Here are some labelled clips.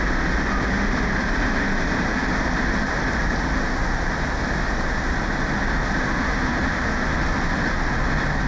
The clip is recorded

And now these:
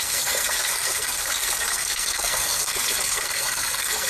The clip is remade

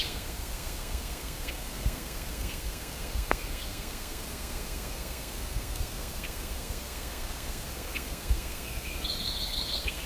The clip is remade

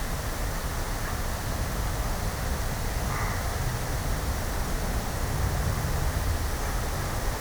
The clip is recorded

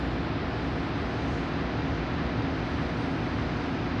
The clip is recorded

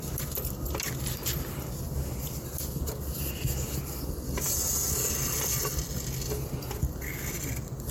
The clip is recorded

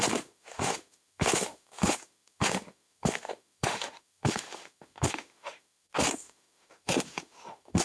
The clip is remade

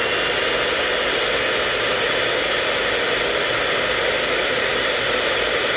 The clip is recorded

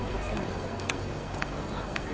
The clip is remade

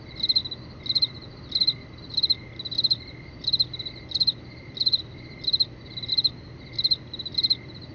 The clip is recorded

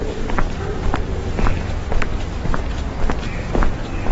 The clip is recorded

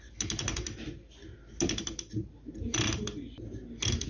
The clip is recorded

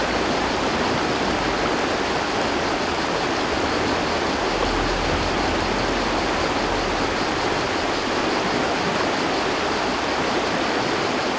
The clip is recorded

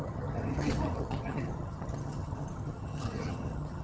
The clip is remade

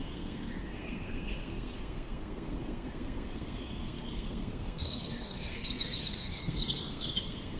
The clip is remade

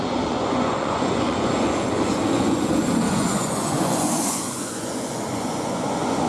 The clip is remade